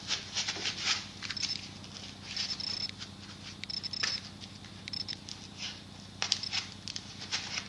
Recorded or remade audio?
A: recorded